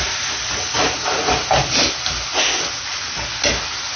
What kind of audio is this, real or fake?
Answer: real